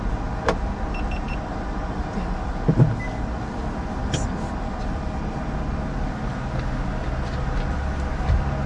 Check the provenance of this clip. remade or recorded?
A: recorded